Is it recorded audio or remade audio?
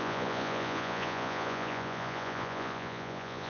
remade